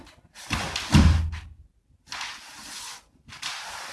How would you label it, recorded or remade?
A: recorded